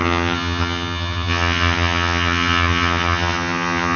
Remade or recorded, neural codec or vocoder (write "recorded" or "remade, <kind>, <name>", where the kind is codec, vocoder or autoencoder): remade, vocoder, HiFi-GAN